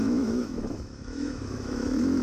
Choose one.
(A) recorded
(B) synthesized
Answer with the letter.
B